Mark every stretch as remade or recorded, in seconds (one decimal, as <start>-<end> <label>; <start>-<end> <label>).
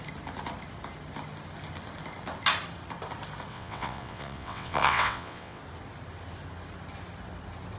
0.0-3.5 recorded; 3.5-5.6 remade; 5.6-7.8 recorded